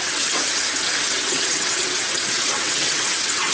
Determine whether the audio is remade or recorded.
remade